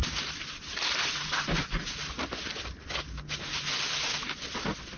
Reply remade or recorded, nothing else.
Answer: recorded